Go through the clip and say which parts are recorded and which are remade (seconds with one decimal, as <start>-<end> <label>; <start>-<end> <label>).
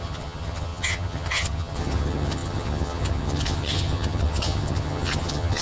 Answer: 0.0-5.6 remade